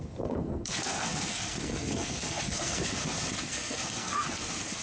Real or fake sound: fake